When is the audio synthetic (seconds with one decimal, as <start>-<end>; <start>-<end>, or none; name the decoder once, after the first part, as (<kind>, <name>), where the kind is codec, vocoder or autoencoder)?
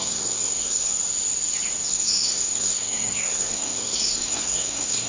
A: 0.0-0.9 (codec, SNAC); 1.9-5.1